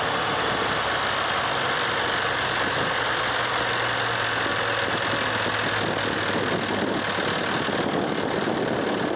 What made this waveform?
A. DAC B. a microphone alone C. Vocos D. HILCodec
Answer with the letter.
B